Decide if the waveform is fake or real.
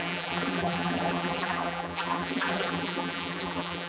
fake